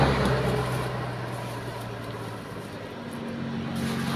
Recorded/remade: recorded